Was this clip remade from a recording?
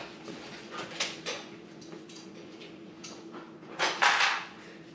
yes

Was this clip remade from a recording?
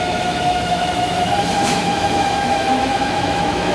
yes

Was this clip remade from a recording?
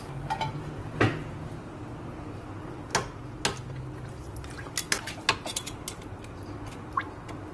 no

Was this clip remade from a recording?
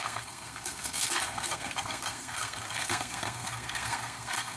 yes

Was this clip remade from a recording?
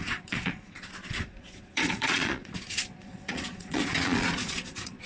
yes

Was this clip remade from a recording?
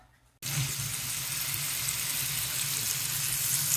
no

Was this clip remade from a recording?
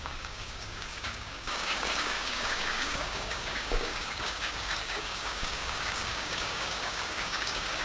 yes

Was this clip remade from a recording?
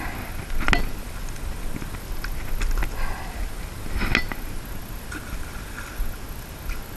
no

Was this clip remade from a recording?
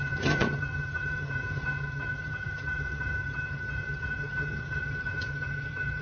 yes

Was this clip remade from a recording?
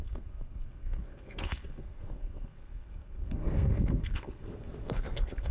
yes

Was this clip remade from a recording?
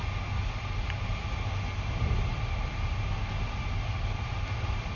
no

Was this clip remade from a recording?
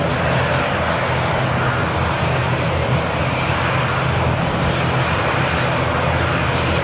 no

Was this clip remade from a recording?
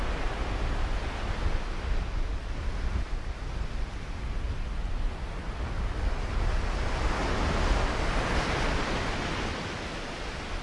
no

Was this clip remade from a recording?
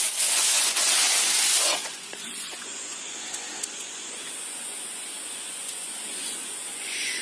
yes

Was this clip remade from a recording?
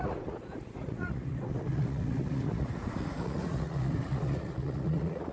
yes